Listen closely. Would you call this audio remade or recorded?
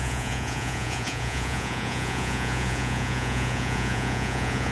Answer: remade